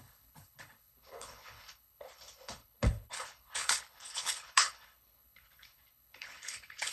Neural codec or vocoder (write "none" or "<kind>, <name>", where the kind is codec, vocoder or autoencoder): codec, HILCodec